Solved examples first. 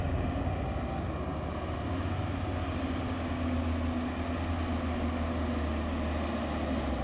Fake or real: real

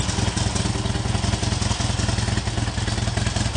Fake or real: real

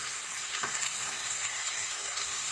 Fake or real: fake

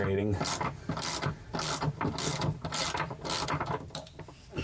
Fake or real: real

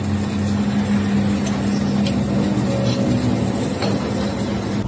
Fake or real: real